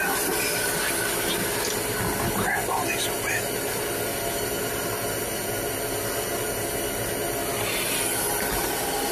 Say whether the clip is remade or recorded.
recorded